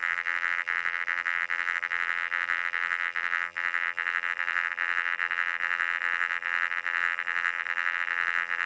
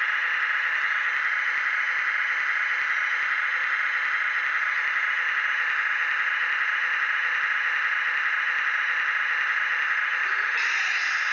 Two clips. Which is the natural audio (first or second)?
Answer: second